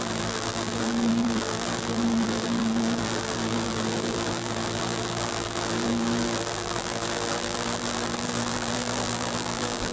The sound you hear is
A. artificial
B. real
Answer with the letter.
A